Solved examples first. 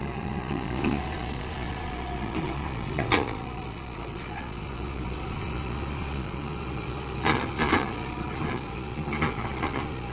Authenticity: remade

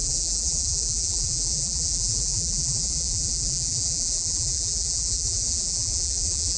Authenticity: remade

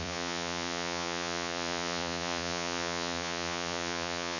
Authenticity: remade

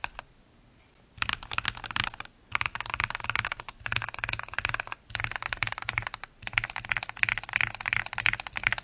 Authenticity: recorded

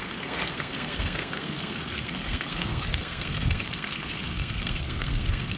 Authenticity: remade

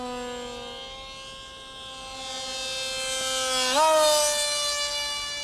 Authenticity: recorded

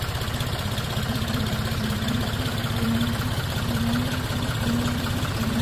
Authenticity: remade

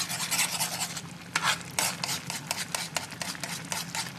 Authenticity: recorded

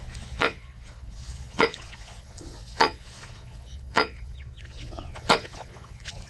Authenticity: remade